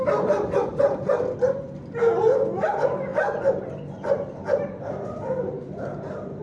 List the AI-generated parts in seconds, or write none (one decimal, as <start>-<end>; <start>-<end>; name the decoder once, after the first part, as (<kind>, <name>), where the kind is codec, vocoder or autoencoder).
none